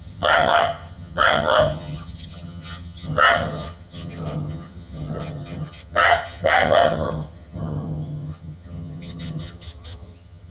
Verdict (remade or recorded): remade